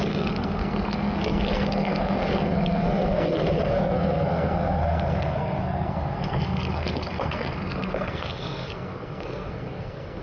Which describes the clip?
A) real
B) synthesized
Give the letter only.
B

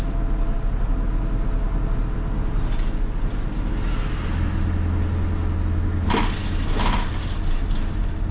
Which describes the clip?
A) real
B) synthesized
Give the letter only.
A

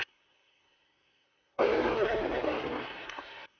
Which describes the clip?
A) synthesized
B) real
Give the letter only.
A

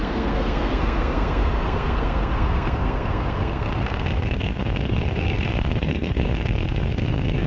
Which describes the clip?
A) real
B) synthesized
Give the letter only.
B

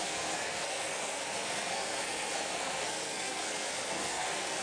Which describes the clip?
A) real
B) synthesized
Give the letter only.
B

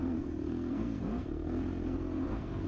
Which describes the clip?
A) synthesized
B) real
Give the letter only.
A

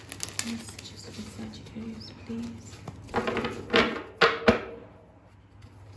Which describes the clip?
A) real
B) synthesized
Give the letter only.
A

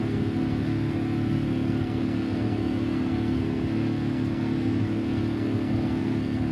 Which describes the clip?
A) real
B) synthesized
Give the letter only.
B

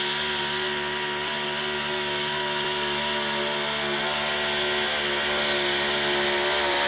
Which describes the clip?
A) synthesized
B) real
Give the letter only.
B